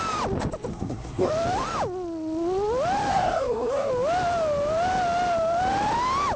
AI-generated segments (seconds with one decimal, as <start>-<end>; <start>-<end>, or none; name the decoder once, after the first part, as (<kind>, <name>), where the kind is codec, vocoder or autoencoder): 0.7-1.3 (codec, SNAC); 3.1-3.9